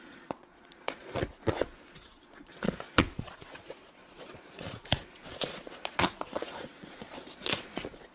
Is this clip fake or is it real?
fake